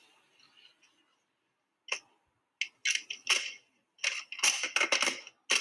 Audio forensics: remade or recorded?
recorded